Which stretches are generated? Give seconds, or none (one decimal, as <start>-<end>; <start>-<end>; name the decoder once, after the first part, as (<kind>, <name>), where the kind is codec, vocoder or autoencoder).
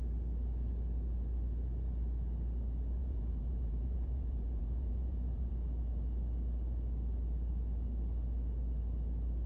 3.0-5.5 (vocoder, Vocos)